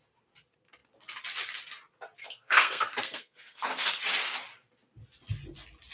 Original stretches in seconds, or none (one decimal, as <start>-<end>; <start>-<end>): 0.0-2.2; 4.0-5.9